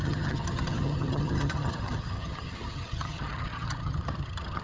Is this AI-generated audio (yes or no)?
yes